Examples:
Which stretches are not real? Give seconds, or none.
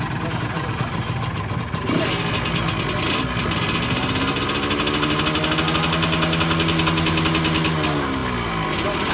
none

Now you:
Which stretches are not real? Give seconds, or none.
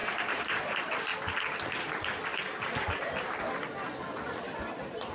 0.0-1.1; 4.2-5.1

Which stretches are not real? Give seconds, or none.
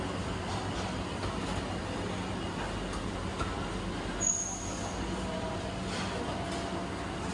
none